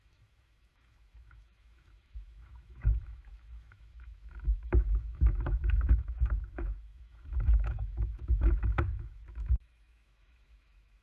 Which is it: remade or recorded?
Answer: remade